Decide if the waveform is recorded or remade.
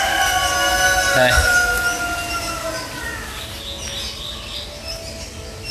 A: recorded